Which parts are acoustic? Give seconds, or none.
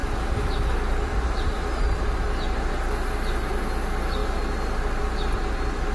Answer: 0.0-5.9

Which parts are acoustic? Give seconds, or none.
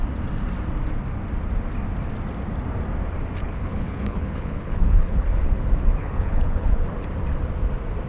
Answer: 0.0-3.4; 5.5-6.0; 6.9-8.1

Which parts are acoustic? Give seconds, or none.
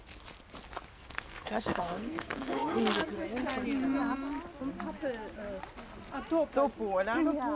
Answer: 0.0-0.9; 2.8-7.6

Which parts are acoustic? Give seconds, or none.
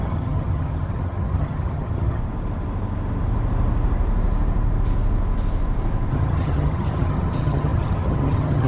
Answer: 2.2-6.1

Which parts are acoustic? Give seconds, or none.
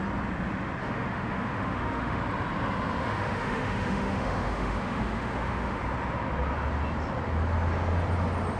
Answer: 0.0-0.8; 2.2-3.0; 5.8-8.6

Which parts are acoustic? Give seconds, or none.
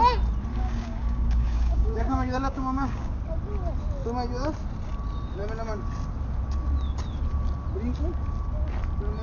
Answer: 0.0-0.5; 3.2-9.2